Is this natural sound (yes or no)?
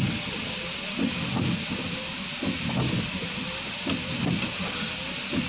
yes